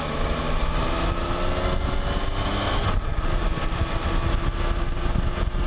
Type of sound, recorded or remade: recorded